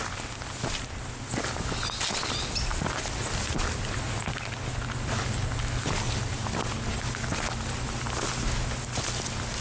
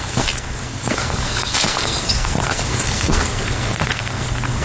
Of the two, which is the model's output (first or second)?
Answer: second